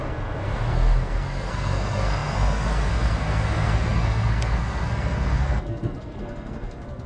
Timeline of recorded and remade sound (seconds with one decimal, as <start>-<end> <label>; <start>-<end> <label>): 0.0-7.1 remade